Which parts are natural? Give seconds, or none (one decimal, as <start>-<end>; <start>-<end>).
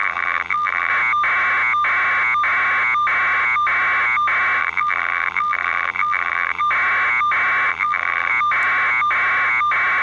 0.9-4.6; 6.6-7.7; 8.3-10.0